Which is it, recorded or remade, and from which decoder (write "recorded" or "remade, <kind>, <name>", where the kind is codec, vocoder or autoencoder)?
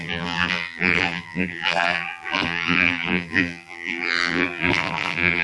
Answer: remade, vocoder, BigVGAN v2